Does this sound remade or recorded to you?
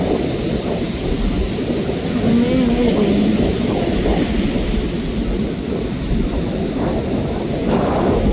recorded